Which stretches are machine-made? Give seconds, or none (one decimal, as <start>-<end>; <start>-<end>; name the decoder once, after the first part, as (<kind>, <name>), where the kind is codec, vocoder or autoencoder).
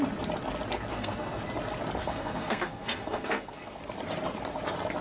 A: 0.9-1.4 (codec, SNAC); 2.0-3.8